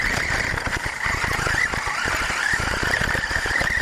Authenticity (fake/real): fake